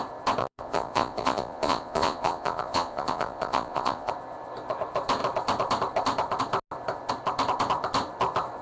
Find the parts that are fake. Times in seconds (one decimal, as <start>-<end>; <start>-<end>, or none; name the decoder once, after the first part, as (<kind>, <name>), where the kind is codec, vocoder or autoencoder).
0.4-4.1 (vocoder, Vocos)